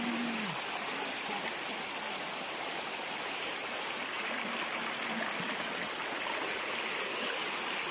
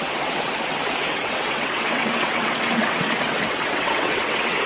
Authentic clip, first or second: first